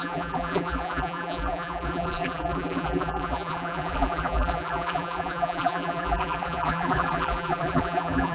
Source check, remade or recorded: remade